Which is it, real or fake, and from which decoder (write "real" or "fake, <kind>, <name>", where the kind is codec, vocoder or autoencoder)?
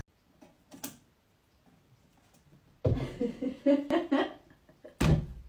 real